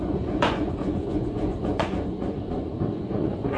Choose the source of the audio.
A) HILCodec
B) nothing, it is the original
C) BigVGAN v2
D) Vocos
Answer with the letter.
D